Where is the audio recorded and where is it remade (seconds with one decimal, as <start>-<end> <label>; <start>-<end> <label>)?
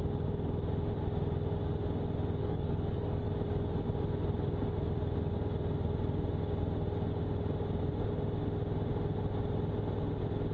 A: 0.0-2.4 recorded; 2.4-3.3 remade; 3.3-10.5 recorded